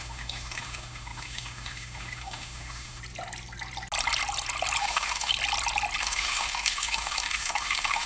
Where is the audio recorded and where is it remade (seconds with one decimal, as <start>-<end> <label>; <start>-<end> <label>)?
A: 0.0-3.0 remade; 3.0-4.8 recorded; 4.8-5.3 remade; 5.3-6.0 recorded; 6.0-8.1 remade